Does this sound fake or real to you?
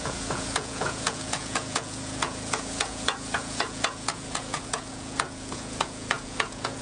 fake